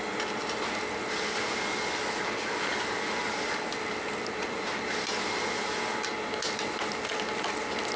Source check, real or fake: real